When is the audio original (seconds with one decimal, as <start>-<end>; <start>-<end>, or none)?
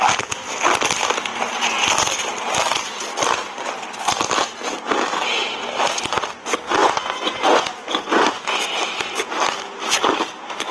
0.0-6.8; 8.6-10.7